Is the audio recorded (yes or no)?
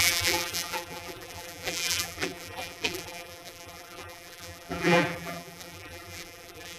no